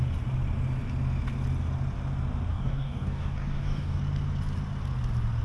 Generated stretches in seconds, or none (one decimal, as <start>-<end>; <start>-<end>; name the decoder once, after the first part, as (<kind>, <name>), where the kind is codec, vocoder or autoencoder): 2.5-4.0 (codec, DAC)